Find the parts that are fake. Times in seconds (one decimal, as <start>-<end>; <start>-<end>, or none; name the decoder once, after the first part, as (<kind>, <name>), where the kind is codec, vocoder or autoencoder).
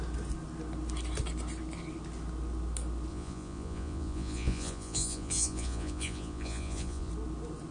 3.1-7.1 (vocoder, Vocos)